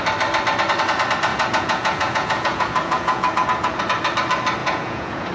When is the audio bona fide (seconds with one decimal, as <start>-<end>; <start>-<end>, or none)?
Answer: 0.0-1.3; 3.8-4.6